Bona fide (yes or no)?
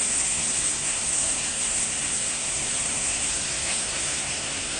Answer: no